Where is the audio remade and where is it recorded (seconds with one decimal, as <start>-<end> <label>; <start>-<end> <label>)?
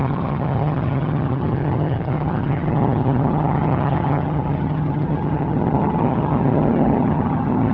0.0-7.7 remade